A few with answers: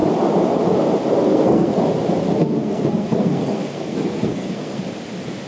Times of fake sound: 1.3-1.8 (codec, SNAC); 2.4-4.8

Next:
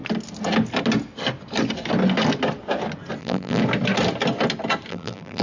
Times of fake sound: 3.2-3.6 (vocoder, BigVGAN v2); 4.9-5.4

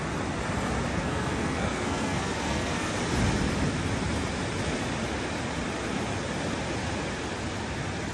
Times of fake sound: 0.9-2.9 (codec, SNAC)

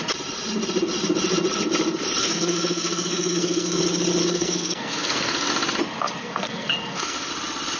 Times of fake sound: 2.2-3.8 (codec, SNAC); 4.2-5.5; 6.2-7.3

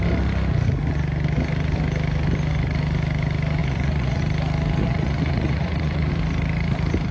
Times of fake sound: 3.6-4.2 (vocoder, Vocos); 4.8-6.1

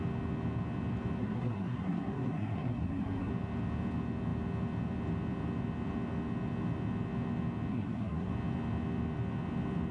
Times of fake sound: 1.2-3.3 (codec, SNAC); 7.7-8.3

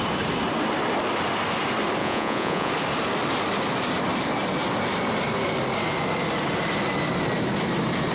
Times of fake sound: 2.0-2.7 (vocoder, Vocos)

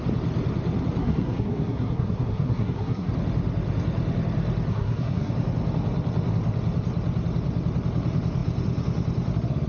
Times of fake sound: 1.0-3.1 (codec, SNAC); 4.7-5.3